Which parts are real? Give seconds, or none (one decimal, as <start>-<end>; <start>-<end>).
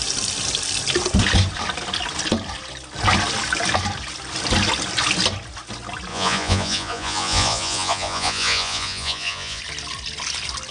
0.0-6.1; 9.6-10.7